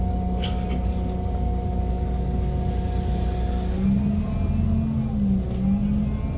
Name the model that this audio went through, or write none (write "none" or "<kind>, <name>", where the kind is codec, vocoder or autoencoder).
none